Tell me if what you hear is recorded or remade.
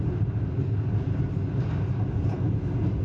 recorded